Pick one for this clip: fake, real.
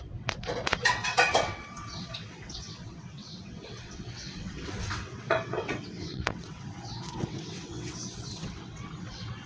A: fake